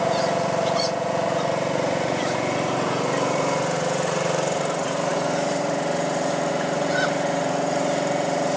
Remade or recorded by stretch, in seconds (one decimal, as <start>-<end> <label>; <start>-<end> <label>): 0.0-8.6 remade